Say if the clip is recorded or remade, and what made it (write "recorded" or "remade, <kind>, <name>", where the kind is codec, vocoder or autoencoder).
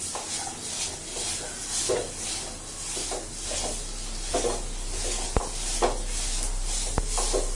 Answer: recorded